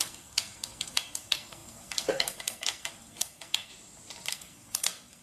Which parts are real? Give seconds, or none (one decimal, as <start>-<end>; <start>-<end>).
3.7-4.3

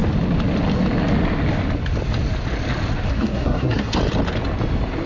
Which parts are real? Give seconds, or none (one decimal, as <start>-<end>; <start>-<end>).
0.0-3.1; 4.0-5.1

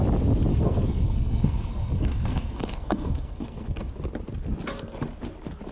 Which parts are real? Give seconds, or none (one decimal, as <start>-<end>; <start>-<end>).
0.0-0.5; 3.9-5.7

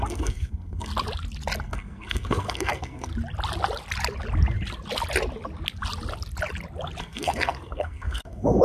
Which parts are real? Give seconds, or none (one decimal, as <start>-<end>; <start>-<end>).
0.9-1.6; 3.1-7.0

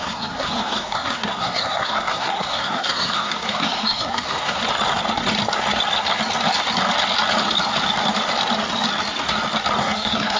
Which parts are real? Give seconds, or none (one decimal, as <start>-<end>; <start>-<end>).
4.6-9.8

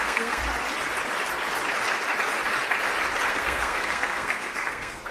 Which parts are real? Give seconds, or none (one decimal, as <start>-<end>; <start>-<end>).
0.4-3.3

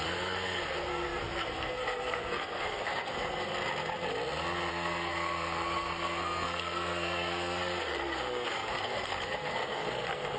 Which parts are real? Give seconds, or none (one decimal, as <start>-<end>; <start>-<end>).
3.5-4.7